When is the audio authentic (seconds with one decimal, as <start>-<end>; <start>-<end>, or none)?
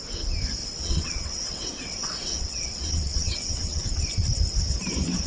0.0-0.6; 3.8-5.3